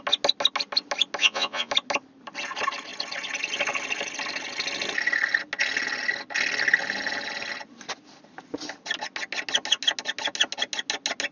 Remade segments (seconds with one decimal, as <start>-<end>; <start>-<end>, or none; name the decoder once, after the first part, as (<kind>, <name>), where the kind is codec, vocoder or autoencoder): 1.2-1.7 (vocoder, Vocos)